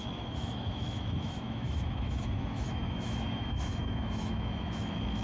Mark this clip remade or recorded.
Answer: remade